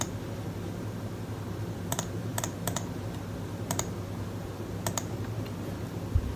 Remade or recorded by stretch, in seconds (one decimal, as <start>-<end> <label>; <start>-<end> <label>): 0.0-6.4 recorded